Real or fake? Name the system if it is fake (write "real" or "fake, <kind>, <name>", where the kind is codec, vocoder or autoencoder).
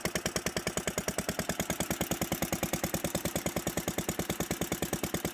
real